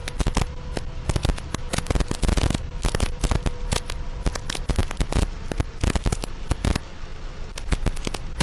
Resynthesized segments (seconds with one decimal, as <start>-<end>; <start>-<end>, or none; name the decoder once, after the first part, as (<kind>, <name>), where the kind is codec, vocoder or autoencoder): none